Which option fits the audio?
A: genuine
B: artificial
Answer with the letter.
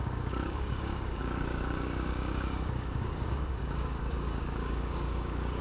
B